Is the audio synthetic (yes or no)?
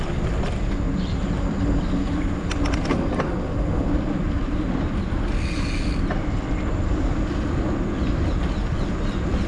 no